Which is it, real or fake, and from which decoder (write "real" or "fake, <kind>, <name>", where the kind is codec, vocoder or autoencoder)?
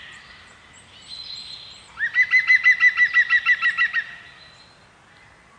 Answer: real